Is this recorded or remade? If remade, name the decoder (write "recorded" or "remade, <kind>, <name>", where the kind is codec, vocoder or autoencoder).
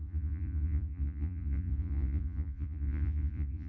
remade, vocoder, Vocos